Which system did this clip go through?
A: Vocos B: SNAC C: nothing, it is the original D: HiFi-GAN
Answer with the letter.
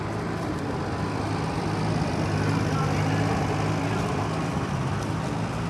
C